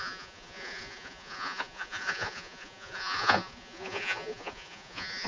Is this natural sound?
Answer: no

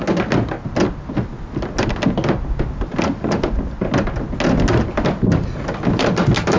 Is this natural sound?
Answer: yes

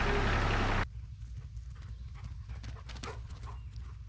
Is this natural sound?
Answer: yes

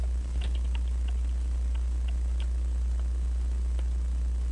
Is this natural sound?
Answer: yes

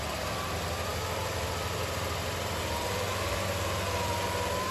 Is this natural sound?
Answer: yes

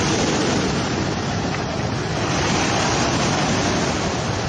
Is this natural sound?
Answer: yes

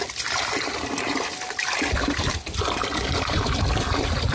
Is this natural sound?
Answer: yes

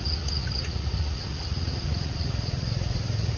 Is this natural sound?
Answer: no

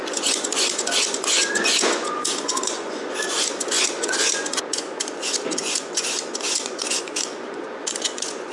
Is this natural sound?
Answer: no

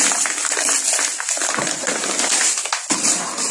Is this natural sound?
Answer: yes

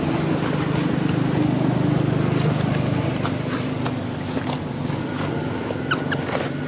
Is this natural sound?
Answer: yes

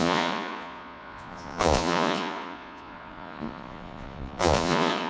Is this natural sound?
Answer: no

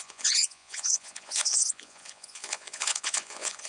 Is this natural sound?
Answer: no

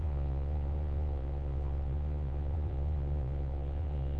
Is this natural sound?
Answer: no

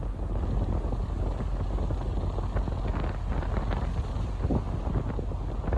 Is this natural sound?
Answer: yes